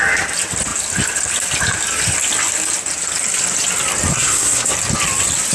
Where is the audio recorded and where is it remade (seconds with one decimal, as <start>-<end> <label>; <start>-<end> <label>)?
0.0-4.1 recorded; 4.1-4.7 remade; 4.7-5.5 recorded